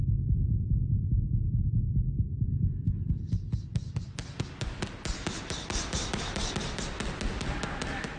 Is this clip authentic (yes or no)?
yes